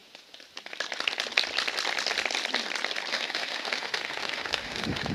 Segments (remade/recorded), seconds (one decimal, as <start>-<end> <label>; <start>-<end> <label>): 0.0-3.1 recorded; 3.1-5.1 remade